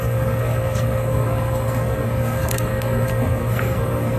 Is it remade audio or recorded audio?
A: remade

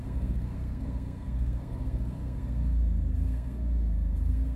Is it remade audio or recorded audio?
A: remade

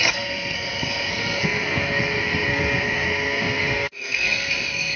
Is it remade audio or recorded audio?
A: remade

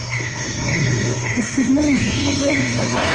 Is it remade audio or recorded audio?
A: remade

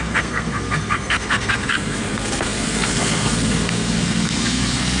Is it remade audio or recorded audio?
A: remade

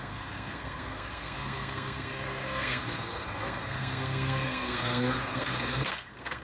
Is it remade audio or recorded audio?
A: remade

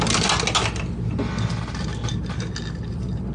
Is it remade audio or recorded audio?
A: recorded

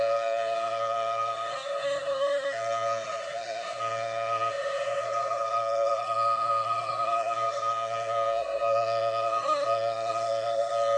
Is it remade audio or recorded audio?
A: remade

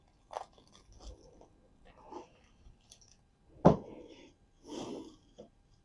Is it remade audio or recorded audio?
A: recorded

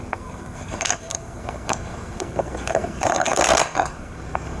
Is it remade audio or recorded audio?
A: remade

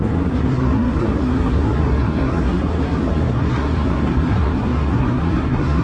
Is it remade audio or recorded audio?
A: remade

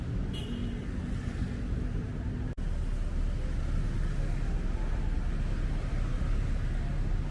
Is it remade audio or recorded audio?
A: recorded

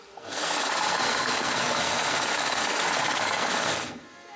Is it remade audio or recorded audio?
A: remade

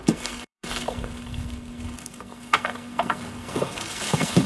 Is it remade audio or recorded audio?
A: remade